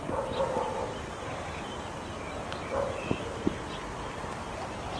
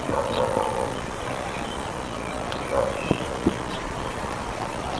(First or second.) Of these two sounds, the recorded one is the first